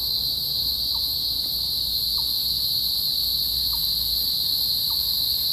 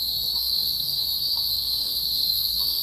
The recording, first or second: first